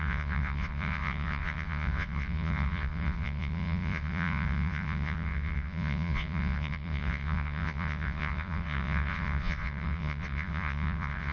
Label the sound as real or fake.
fake